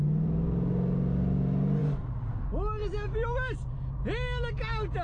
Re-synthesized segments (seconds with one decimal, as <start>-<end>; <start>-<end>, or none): none